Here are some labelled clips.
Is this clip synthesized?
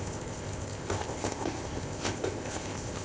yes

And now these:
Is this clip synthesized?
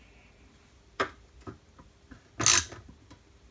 no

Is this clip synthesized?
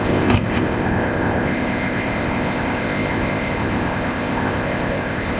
yes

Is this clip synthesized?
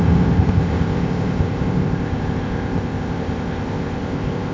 yes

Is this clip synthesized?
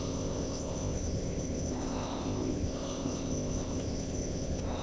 yes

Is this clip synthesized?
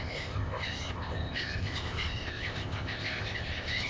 yes